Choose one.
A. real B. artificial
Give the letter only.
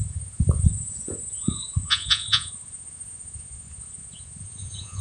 B